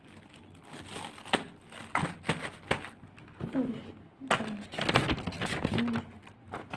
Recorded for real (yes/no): yes